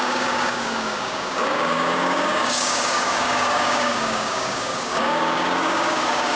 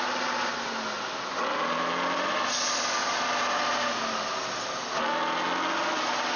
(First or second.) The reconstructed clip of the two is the first